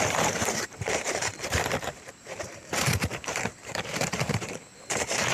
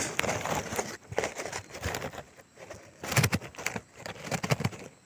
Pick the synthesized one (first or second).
first